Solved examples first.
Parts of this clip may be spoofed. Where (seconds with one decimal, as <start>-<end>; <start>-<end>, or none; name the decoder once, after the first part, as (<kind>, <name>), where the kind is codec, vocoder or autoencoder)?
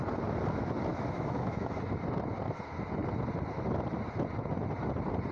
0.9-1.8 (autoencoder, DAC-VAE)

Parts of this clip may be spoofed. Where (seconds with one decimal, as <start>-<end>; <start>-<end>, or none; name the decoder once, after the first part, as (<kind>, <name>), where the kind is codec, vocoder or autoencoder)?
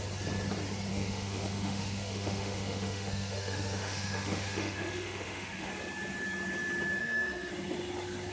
0.9-5.7 (autoencoder, DAC-VAE); 7.0-7.5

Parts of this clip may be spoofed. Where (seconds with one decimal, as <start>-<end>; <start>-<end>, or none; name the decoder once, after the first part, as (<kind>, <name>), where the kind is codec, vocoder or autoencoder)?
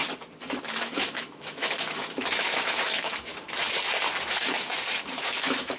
0.6-3.3 (autoencoder, DAC-VAE); 4.2-4.7; 5.2-5.8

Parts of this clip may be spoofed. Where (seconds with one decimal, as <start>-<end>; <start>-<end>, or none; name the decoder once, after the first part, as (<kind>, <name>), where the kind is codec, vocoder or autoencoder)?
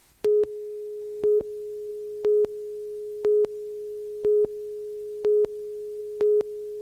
0.0-1.4 (autoencoder, DAC-VAE)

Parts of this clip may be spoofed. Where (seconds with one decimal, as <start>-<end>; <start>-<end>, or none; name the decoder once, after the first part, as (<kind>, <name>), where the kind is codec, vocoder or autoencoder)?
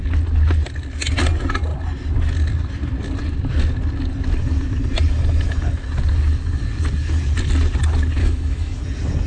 8.2-8.8 (autoencoder, DAC-VAE)